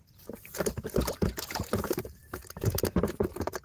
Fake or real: fake